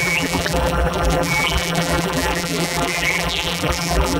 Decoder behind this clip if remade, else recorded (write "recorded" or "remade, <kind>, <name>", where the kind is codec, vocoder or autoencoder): remade, vocoder, BigVGAN v2